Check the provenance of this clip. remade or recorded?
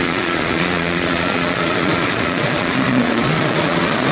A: remade